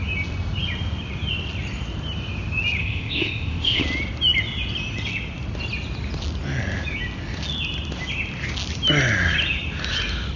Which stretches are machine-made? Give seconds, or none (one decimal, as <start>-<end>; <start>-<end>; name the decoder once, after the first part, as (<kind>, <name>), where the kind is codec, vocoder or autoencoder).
2.8-3.8 (codec, ZipCodec)